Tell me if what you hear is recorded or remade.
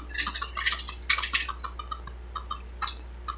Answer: recorded